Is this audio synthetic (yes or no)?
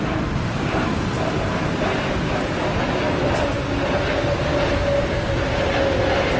no